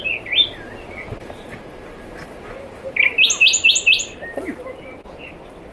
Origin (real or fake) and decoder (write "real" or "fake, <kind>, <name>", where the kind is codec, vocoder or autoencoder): real